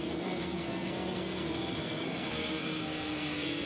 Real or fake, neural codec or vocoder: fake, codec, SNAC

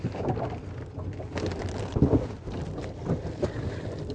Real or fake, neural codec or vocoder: real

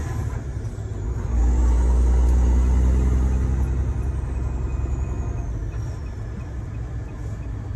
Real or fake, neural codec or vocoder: real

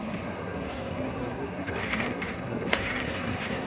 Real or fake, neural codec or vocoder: fake, codec, SNAC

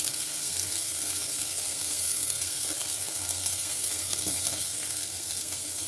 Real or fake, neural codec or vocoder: fake, codec, SNAC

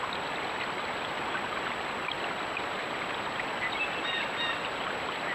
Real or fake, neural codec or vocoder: real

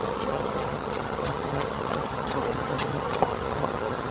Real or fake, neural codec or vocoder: fake, vocoder, HiFi-GAN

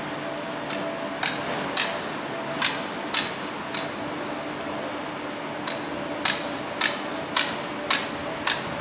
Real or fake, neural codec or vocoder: real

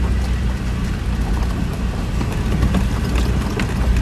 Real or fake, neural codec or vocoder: real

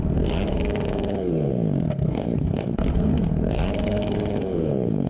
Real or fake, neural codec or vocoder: fake, codec, SNAC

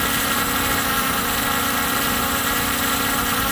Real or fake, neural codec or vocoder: real